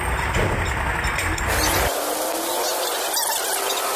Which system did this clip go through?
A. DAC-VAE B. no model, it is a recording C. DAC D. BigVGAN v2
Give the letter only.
B